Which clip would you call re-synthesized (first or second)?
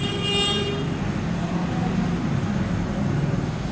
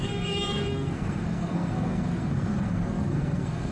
second